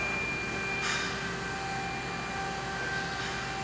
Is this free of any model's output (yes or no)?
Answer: yes